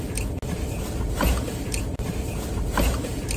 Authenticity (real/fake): fake